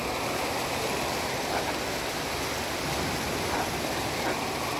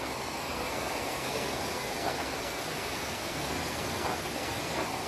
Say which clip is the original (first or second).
first